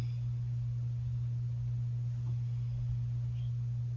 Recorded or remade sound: recorded